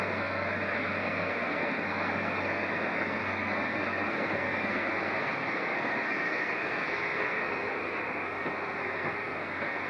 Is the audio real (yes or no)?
no